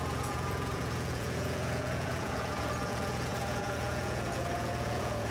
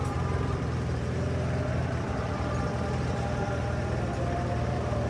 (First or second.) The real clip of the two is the second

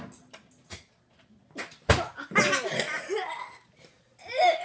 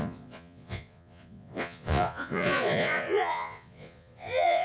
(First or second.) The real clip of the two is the first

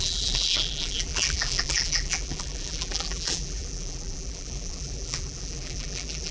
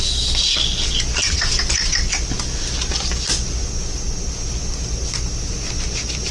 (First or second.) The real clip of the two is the second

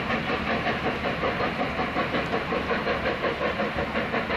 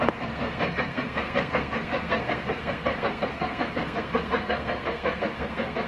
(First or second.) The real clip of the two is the first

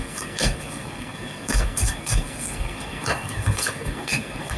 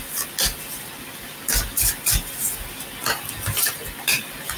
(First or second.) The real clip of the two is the second